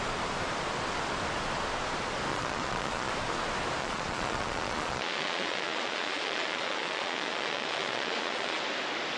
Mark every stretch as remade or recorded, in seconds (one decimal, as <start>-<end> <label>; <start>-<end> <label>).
0.0-2.3 recorded; 2.3-3.1 remade; 3.1-3.8 recorded; 3.8-8.6 remade; 8.6-9.2 recorded